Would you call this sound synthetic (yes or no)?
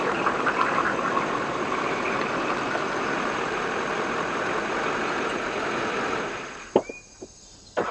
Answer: no